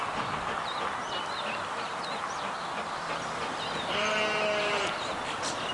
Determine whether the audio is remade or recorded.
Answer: recorded